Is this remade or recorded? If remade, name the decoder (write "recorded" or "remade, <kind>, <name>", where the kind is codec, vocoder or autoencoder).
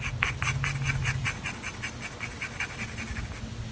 recorded